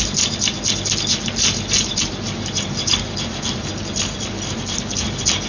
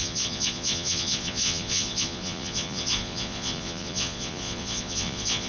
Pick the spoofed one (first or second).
second